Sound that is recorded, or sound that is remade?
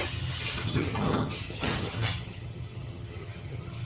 remade